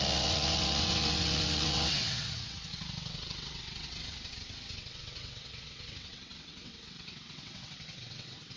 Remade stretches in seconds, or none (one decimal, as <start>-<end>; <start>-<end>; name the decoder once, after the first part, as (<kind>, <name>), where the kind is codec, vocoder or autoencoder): 0.0-8.6 (vocoder, WaveNeXt)